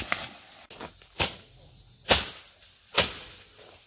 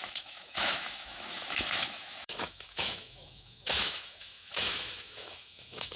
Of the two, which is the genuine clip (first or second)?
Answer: first